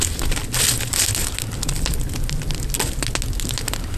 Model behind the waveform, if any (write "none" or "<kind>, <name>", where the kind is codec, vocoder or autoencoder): none